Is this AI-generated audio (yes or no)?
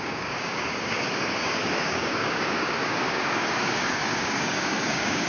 yes